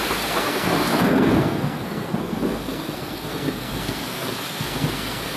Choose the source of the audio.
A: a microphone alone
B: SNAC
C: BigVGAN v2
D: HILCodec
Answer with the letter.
B